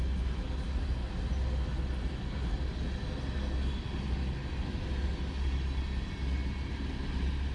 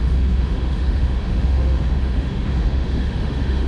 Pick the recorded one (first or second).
first